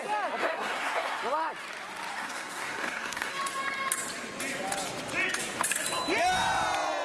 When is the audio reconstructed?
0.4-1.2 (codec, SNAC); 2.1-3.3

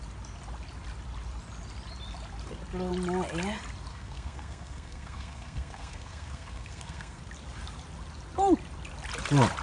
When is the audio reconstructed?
3.9-7.2 (codec, SNAC)

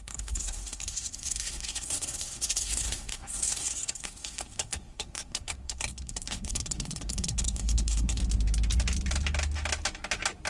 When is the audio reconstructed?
0.0-8.2 (codec, SNAC)

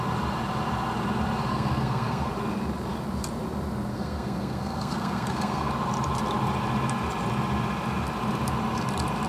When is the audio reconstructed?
1.5-2.3 (codec, SNAC); 3.9-5.7

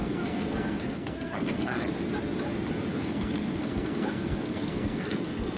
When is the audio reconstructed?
0.0-1.9 (codec, SNAC); 2.9-5.6

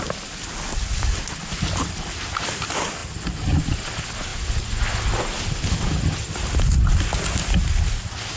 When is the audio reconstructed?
none